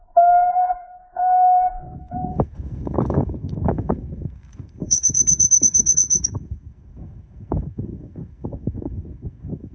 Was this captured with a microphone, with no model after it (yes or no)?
no